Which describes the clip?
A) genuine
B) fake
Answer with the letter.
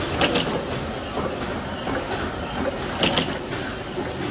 A